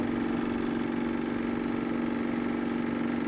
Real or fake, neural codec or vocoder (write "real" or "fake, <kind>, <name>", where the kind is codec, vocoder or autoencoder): real